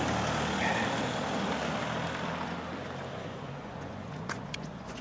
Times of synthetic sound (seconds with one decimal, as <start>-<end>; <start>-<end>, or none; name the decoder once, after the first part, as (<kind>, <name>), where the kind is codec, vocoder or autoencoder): 3.1-5.0 (vocoder, Vocos)